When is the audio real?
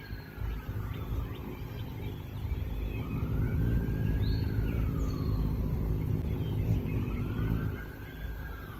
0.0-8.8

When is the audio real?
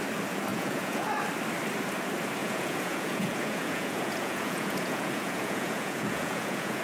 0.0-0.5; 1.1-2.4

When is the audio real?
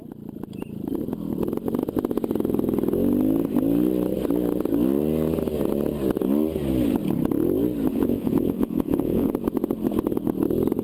0.0-7.9; 9.3-10.8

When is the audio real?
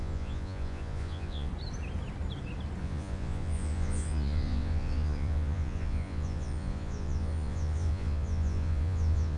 1.5-2.8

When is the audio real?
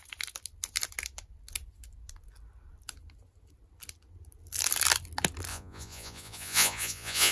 0.0-5.5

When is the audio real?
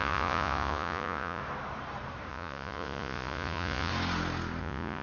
1.4-2.3; 3.9-4.6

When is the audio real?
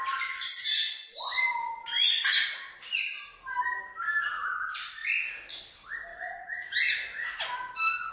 0.0-6.1; 7.4-8.1